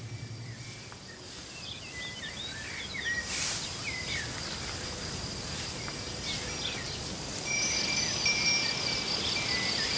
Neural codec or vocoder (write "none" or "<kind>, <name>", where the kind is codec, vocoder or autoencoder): none